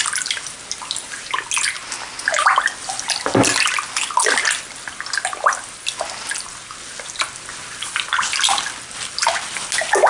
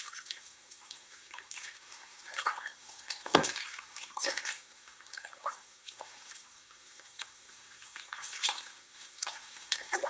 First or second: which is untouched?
first